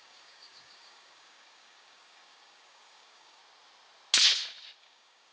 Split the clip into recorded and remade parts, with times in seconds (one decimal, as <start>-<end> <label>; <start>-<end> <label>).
0.0-3.4 remade; 3.4-4.8 recorded; 4.8-5.3 remade